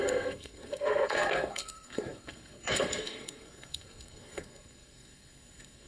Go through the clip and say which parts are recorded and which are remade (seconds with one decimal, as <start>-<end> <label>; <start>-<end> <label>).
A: 0.0-5.9 remade